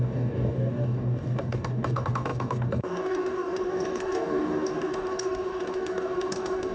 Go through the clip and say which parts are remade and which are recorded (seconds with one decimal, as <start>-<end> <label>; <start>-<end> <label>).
0.0-6.7 remade